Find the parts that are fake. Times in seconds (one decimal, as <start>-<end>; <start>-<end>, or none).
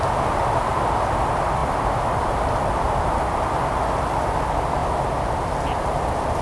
none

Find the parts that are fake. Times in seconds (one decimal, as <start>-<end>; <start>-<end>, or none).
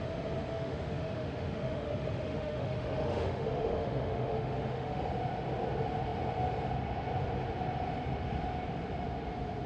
0.5-5.0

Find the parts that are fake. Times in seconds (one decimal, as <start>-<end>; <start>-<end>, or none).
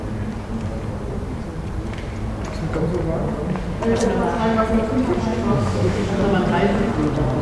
5.3-6.1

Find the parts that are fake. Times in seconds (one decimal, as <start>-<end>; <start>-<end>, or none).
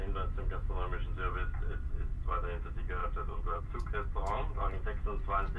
1.0-1.9; 3.0-3.6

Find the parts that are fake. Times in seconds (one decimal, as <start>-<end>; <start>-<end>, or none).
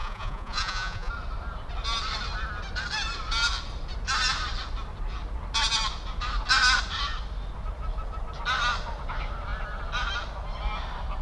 0.0-1.1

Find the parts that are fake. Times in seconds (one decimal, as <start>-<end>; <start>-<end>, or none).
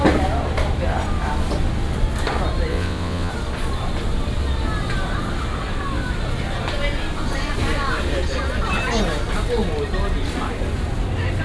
2.7-3.3